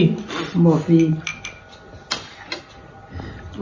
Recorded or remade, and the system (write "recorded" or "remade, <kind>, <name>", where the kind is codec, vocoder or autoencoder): recorded